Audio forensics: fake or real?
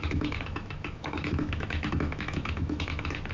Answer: fake